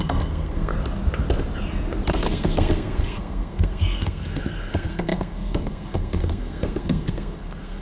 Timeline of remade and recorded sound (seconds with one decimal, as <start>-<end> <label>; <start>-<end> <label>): 0.0-0.7 remade; 0.7-2.1 recorded; 2.1-7.8 remade